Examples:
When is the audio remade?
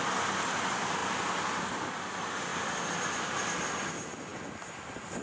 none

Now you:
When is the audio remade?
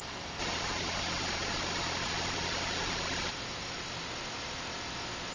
0.4-3.3